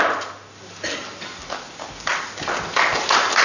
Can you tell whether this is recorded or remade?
recorded